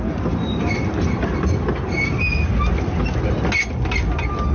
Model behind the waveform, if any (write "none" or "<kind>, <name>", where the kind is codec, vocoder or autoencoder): none